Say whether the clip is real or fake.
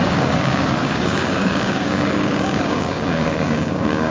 fake